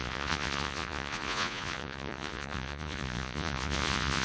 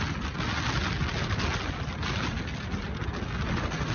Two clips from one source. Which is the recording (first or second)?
second